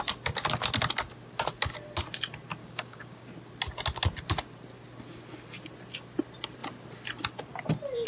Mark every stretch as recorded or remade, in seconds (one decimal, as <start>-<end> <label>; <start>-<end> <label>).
0.0-2.6 recorded; 2.6-3.3 remade; 3.3-8.1 recorded